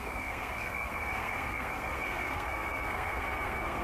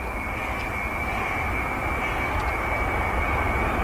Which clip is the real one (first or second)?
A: second